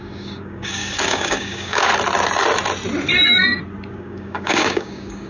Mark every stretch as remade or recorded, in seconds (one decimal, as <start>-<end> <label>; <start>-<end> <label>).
0.0-1.9 remade; 1.9-3.9 recorded; 3.9-5.3 remade